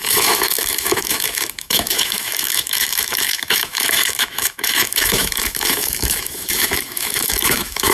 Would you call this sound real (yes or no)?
no